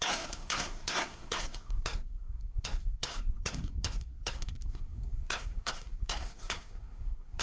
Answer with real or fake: fake